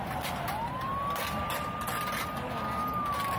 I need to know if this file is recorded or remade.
recorded